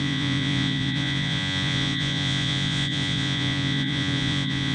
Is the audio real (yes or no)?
no